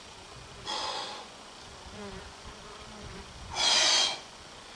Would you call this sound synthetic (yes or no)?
yes